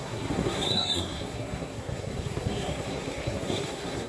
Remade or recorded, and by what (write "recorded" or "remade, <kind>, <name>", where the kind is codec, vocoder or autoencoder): remade, codec, SNAC